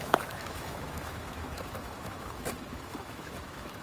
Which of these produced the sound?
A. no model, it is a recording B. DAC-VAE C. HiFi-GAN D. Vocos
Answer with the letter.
B